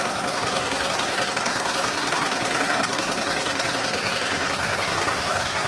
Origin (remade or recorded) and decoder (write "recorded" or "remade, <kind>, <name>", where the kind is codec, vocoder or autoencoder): remade, codec, SNAC